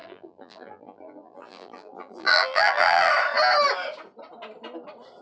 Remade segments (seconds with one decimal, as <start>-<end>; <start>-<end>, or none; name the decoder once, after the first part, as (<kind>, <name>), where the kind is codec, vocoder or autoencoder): 0.0-3.1 (vocoder, BigVGAN v2)